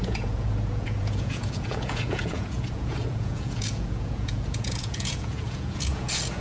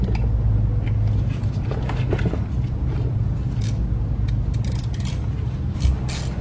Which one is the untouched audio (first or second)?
second